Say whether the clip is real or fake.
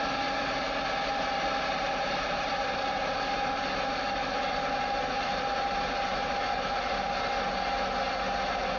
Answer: real